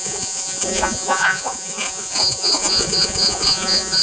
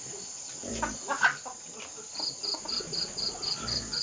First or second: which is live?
second